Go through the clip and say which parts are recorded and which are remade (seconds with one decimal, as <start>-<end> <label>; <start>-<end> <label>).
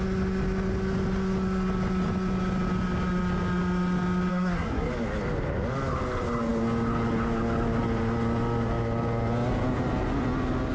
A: 0.0-4.3 recorded; 4.3-4.9 remade; 4.9-10.7 recorded